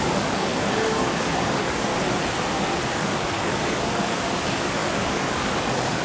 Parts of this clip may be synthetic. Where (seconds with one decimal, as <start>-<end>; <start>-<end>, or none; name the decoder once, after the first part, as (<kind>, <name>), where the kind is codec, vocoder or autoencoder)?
0.0-1.9 (codec, DAC); 2.9-6.0

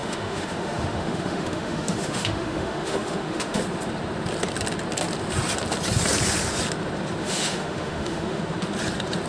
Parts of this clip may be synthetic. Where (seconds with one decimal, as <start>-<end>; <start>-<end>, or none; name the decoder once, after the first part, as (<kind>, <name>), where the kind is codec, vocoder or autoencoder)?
0.0-3.6 (autoencoder, DAC-VAE); 7.2-8.4

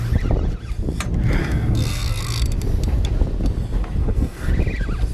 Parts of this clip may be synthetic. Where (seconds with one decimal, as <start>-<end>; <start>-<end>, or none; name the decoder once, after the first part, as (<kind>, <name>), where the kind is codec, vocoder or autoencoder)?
1.4-2.2 (codec, SNAC); 4.0-4.5

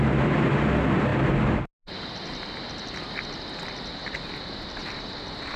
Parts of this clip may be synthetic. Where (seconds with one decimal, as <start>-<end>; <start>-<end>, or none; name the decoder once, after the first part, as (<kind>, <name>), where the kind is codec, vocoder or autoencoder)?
none

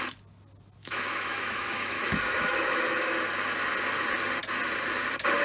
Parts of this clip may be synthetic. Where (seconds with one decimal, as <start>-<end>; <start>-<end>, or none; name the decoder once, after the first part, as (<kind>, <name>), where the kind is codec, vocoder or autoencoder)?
0.8-3.1 (autoencoder, DAC-VAE)

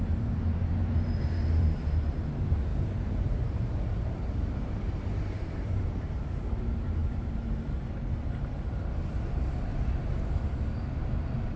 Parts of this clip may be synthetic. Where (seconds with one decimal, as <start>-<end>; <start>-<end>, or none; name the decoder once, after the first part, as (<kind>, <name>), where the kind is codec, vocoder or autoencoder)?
0.0-9.7 (vocoder, BigVGAN v2); 10.5-11.6

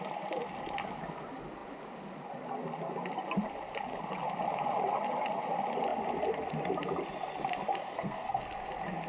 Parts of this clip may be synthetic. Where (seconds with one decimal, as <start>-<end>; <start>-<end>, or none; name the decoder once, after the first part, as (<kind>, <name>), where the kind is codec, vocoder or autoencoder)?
7.8-8.4 (codec, SNAC)

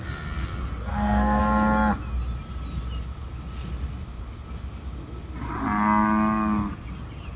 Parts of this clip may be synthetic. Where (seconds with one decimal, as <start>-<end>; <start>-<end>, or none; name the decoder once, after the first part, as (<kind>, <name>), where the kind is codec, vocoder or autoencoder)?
0.9-1.4 (codec, SNAC)